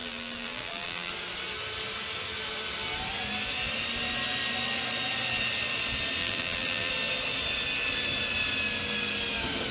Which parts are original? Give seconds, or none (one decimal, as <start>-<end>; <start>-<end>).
1.1-6.2; 6.9-9.7